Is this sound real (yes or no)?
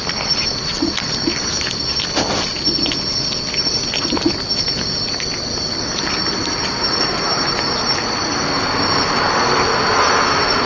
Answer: yes